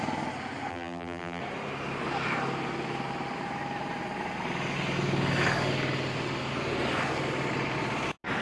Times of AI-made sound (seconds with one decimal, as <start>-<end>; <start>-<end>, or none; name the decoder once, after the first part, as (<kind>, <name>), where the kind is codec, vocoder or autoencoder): 0.7-1.4 (vocoder, BigVGAN v2)

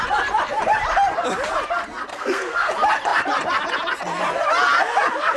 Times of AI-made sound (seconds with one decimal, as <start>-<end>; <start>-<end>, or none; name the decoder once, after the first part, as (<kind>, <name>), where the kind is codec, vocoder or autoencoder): 2.1-2.7 (codec, SNAC)

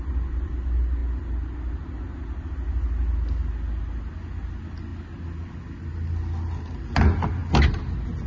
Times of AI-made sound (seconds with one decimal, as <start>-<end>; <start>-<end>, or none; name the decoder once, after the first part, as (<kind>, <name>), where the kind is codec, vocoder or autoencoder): none

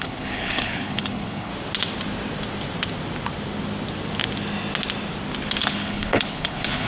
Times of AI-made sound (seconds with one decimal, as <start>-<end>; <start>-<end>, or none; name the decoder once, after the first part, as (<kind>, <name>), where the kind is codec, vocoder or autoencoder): 0.0-1.5 (codec, HILCodec); 5.6-6.9

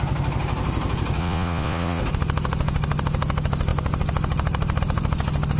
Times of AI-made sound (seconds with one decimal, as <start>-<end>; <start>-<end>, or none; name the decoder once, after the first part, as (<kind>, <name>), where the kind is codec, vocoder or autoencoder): 1.2-2.0 (vocoder, Vocos)

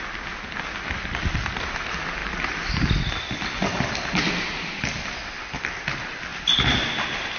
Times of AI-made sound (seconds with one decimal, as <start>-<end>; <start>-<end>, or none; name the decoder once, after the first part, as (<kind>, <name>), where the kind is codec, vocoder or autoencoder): none

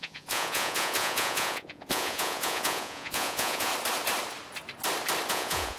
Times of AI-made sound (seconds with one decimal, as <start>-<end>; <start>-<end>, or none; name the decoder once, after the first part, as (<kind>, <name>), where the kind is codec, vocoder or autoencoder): 0.0-3.7 (vocoder, Vocos); 5.3-5.8

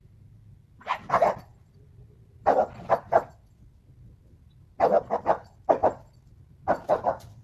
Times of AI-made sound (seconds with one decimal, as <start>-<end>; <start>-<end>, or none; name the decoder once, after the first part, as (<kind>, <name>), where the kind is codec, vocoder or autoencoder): none